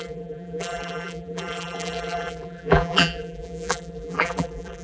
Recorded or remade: remade